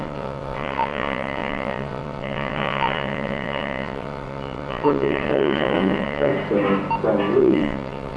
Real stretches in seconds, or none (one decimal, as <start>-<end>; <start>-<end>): 6.3-7.4